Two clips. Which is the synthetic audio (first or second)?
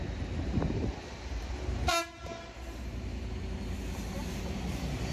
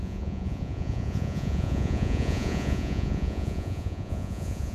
second